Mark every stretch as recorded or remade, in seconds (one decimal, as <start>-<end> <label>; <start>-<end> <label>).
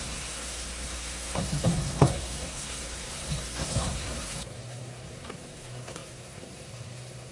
0.0-7.3 remade